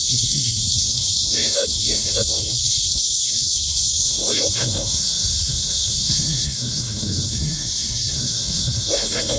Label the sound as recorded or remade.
remade